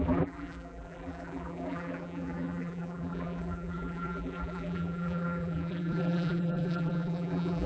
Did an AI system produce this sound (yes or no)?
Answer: yes